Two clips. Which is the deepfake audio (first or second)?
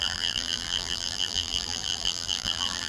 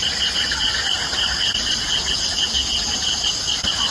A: first